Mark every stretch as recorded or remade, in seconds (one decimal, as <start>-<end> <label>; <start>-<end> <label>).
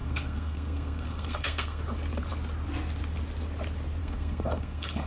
0.0-1.8 remade; 1.8-4.0 recorded; 4.0-5.1 remade